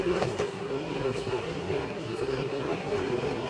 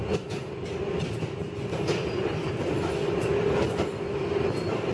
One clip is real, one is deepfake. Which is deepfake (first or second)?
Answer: first